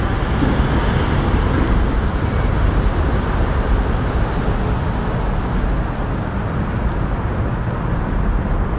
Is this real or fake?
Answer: real